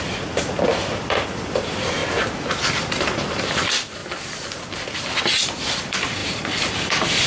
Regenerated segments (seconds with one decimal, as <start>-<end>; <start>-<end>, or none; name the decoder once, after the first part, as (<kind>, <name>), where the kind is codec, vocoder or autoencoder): 0.0-2.0 (vocoder, BigVGAN v2); 2.6-4.0; 5.2-7.3